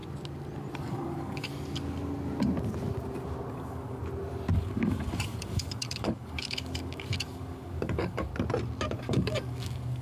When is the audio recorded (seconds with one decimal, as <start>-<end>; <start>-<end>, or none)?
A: 0.0-0.8; 1.5-3.5; 4.0-4.5; 8.3-8.9